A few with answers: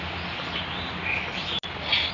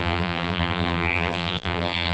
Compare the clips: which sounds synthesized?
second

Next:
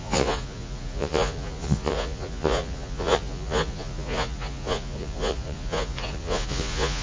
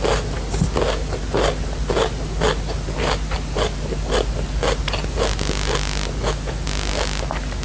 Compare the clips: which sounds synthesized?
first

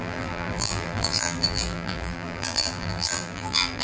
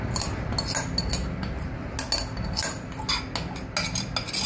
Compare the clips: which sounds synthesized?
first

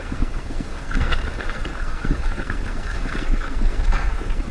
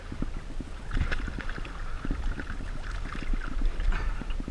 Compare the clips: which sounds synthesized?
first